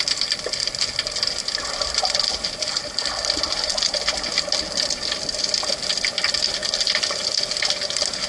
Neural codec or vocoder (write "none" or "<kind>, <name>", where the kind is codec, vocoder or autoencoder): none